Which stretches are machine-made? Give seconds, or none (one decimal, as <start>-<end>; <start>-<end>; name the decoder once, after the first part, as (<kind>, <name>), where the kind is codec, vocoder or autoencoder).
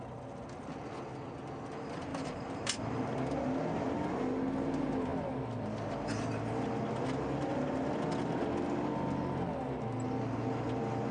2.1-3.1 (vocoder, BigVGAN v2)